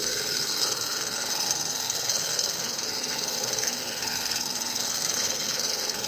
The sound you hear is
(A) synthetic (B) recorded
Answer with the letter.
A